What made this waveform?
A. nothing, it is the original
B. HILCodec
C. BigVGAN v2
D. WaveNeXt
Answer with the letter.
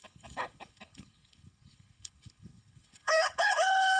B